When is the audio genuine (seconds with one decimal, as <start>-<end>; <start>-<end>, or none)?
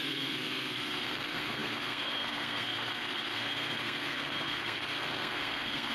none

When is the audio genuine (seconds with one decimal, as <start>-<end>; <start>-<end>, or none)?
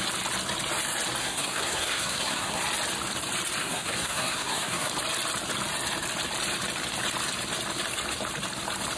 0.0-1.2; 2.6-3.6; 4.9-9.0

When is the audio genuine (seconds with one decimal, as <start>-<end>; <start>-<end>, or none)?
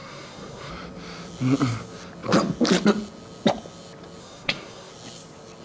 0.7-4.2; 4.9-5.6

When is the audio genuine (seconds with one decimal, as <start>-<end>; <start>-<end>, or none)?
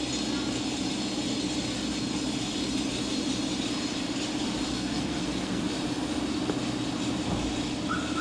0.0-4.7; 5.6-8.2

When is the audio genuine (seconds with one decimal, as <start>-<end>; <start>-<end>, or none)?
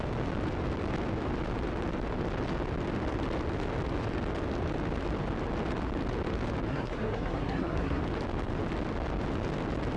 0.0-6.7; 8.0-10.0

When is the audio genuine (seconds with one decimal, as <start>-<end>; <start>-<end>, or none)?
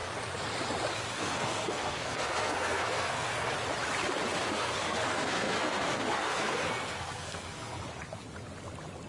0.0-1.1; 3.5-4.4; 7.8-9.1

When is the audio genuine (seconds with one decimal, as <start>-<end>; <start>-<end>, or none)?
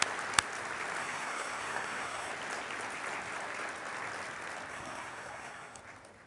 0.0-1.0; 2.3-4.7; 5.8-6.3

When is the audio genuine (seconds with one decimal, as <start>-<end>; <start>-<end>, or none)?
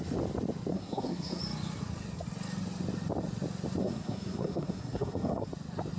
0.0-0.7; 1.4-3.8; 5.5-6.0